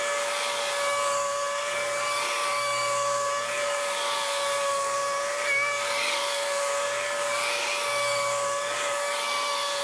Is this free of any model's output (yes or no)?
no